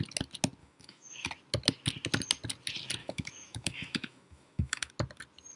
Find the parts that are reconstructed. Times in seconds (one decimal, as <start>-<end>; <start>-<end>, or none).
0.6-1.3; 3.0-4.9